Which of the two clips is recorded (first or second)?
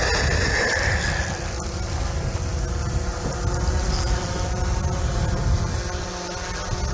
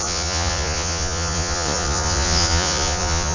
first